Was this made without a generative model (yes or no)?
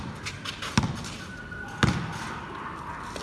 yes